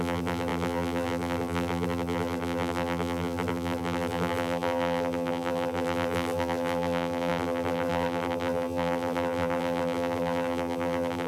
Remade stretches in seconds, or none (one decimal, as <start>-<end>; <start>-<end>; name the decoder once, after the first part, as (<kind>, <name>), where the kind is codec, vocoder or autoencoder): 0.0-11.3 (vocoder, BigVGAN v2)